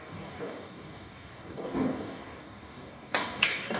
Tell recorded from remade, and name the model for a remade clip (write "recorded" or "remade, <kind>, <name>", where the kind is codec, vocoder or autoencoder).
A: remade, codec, DAC